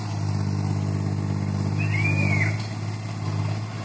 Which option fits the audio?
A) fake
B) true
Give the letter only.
B